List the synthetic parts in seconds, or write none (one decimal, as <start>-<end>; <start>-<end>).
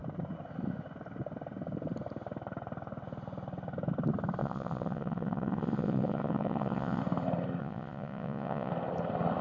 4.4-7.0; 7.6-8.7